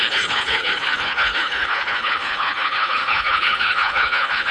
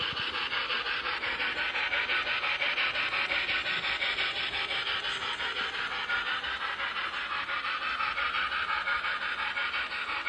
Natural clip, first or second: second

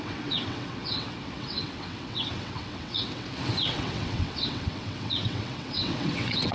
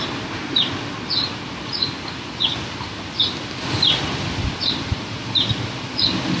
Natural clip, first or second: second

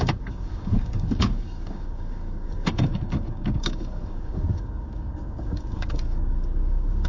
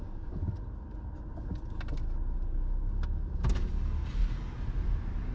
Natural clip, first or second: second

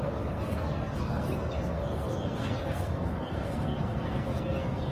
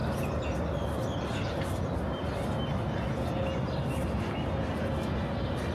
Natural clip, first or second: second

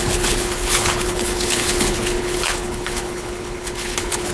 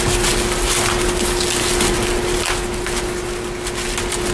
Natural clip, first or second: second